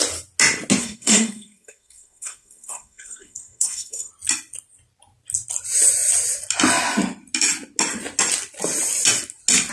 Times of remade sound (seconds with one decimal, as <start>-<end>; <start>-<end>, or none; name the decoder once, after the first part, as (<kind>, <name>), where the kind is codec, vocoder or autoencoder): 0.8-4.1 (codec, SNAC)